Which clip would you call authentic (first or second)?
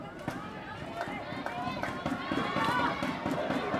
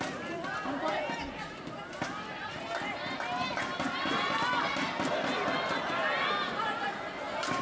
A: second